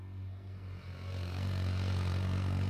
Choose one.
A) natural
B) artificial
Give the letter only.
B